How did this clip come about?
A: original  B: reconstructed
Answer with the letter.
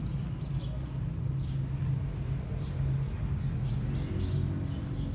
A